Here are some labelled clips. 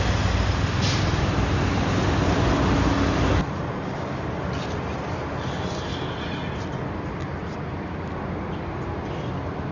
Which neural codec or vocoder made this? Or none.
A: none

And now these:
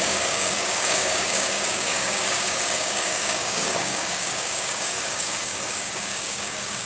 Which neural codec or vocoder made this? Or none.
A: codec, DAC